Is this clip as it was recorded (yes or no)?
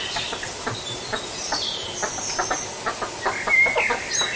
yes